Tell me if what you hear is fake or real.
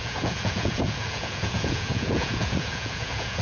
fake